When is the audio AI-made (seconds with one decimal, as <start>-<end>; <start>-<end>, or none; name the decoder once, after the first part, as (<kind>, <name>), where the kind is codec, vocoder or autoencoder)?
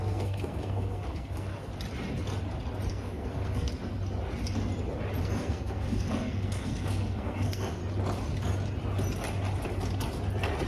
0.0-1.7 (codec, SNAC); 2.9-3.7; 5.2-7.8